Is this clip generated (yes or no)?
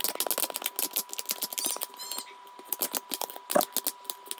no